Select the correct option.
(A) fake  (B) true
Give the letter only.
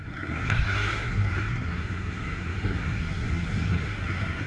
A